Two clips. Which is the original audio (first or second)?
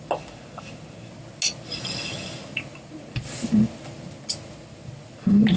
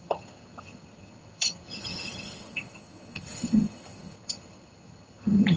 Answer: first